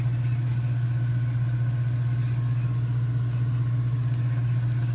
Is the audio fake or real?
real